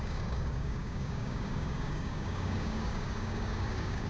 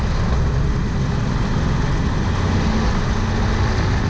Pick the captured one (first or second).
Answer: second